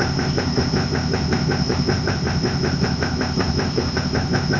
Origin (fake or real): fake